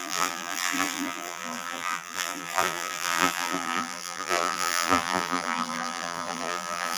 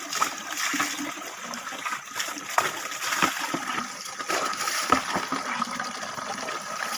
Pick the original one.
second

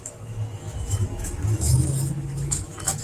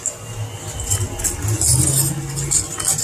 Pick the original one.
second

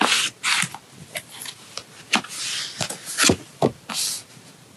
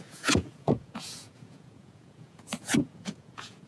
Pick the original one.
first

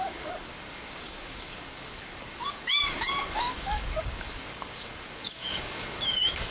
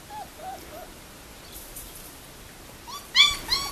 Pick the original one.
second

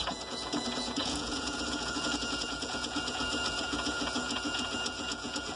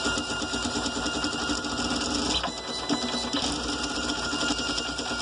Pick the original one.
second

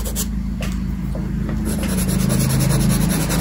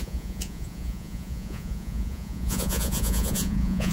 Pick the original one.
first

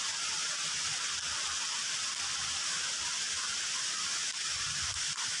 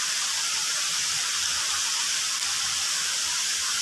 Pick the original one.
first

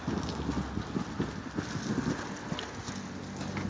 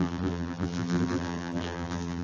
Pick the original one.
first